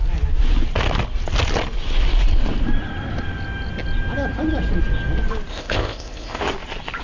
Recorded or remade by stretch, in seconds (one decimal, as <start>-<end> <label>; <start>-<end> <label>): 0.0-5.5 recorded; 5.5-6.4 remade; 6.4-7.0 recorded